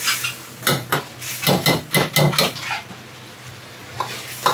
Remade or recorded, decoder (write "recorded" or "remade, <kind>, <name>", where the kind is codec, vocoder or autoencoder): recorded